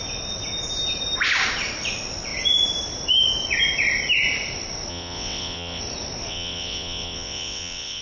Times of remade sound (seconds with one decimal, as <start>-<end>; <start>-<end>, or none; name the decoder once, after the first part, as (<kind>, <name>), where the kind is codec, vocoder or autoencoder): 4.9-5.8 (vocoder, WaveNeXt); 6.3-8.0